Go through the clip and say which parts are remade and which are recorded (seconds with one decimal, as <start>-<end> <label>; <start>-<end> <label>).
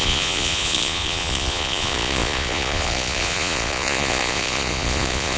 0.0-5.4 remade